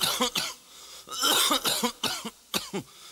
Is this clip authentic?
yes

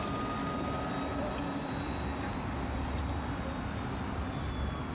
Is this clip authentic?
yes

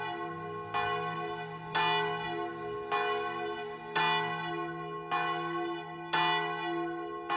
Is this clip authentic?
yes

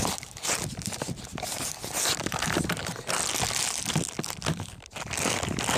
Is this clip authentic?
yes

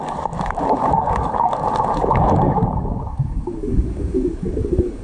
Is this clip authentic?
no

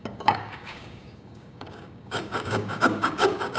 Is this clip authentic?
no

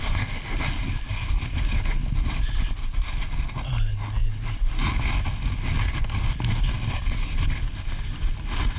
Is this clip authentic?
yes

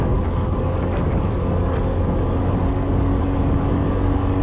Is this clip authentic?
no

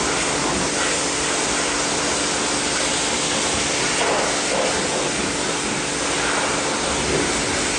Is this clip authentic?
yes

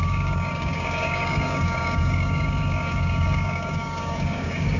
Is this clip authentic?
no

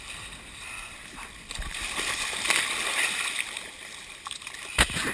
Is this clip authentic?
yes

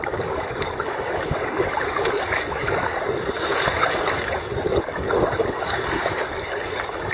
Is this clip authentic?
no